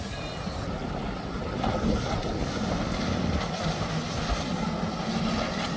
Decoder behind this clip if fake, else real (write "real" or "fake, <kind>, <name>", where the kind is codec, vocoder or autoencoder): real